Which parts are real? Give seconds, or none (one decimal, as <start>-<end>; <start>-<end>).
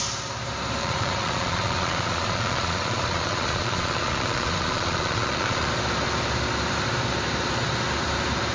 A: 0.0-0.8; 5.7-8.5